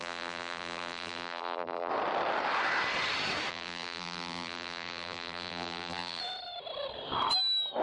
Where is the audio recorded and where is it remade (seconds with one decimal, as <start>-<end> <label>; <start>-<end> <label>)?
0.0-1.9 remade; 1.9-3.5 recorded; 3.5-6.2 remade; 6.2-7.8 recorded